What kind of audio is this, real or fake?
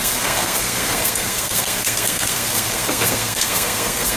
fake